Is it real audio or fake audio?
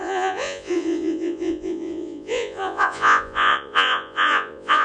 fake